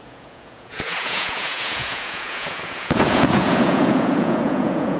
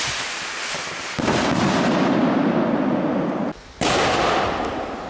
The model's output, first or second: first